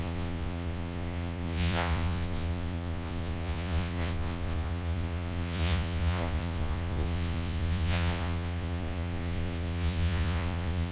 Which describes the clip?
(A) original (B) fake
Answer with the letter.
B